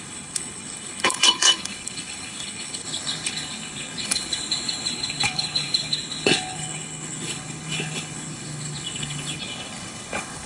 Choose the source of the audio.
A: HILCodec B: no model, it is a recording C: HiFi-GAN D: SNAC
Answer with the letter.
A